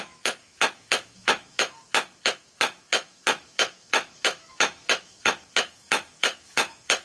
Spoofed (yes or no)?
yes